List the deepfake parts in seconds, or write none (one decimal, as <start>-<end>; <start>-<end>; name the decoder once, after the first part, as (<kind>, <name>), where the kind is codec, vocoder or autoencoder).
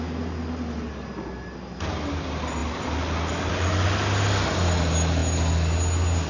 none